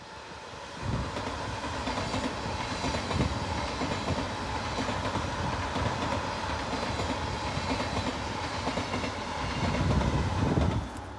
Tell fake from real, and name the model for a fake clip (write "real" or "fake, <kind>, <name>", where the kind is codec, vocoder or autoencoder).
real